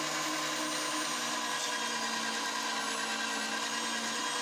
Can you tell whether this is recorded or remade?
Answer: recorded